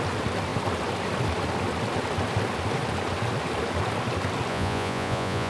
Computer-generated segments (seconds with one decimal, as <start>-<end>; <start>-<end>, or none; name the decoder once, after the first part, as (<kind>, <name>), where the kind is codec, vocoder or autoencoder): 4.5-5.5 (vocoder, Vocos)